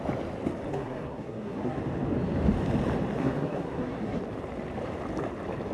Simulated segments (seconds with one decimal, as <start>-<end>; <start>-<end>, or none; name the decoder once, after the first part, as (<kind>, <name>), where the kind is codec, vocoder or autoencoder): 0.7-1.8 (codec, SNAC); 3.2-4.2